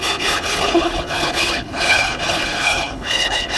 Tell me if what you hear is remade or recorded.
remade